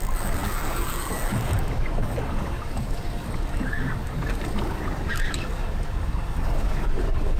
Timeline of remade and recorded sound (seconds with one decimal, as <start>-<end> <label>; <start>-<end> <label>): 0.0-7.4 remade

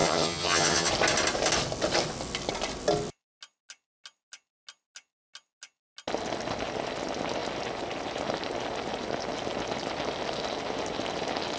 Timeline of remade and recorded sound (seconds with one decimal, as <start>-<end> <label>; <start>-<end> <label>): 0.0-0.9 remade; 0.9-11.6 recorded

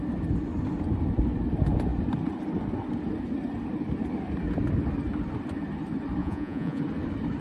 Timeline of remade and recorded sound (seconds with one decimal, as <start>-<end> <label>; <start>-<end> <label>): 0.0-6.2 recorded; 6.2-6.8 remade; 6.8-7.4 recorded

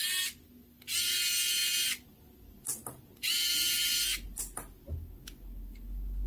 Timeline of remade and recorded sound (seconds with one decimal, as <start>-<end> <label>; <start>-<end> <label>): 0.0-6.3 recorded

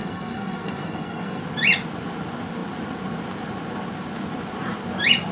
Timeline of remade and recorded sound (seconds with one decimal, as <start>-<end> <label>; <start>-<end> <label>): 0.0-1.4 remade; 1.4-5.3 recorded

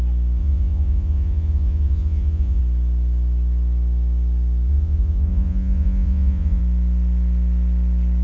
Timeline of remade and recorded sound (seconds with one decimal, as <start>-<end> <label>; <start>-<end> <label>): 0.0-0.4 recorded; 0.4-2.6 remade; 2.6-4.7 recorded; 4.7-6.6 remade; 6.6-8.2 recorded

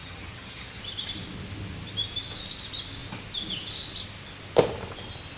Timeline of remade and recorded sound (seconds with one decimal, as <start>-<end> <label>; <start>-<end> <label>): 0.0-0.8 remade; 0.8-5.4 recorded